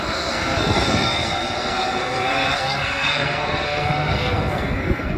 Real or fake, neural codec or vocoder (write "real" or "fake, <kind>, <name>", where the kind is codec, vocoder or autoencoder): fake, codec, SNAC